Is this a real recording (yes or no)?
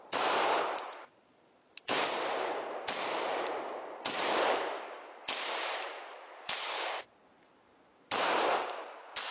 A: no